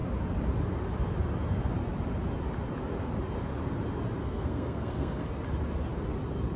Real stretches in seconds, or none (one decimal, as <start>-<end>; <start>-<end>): 0.0-4.2; 5.3-6.6